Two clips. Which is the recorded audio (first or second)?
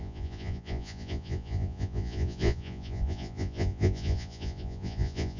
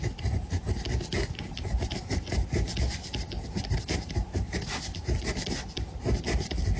second